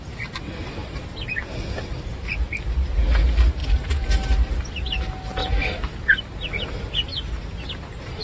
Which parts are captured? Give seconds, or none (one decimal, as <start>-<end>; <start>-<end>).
0.0-3.6; 4.1-8.2